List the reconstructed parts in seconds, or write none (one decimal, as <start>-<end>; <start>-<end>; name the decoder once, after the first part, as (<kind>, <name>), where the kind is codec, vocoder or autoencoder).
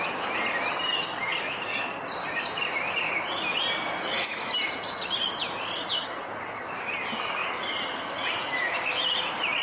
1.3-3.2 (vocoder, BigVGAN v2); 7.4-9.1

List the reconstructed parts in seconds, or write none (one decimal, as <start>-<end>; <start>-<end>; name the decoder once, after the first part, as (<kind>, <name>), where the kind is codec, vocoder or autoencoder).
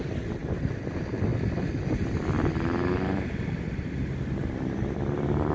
none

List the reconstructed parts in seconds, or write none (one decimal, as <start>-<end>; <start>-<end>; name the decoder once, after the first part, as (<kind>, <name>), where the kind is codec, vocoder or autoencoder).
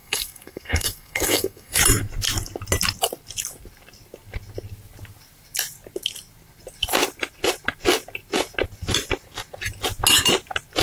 0.0-1.8 (codec, SNAC)